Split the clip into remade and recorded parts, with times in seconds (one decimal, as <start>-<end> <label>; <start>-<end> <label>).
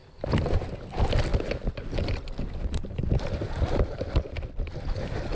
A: 0.0-5.3 recorded